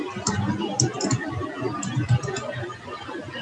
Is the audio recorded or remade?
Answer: recorded